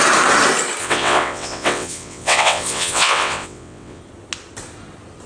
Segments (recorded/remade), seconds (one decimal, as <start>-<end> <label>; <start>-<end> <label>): 0.0-0.8 recorded; 0.8-4.0 remade; 4.0-5.3 recorded